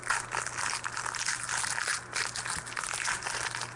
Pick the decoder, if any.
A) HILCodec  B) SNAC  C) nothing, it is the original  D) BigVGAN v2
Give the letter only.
C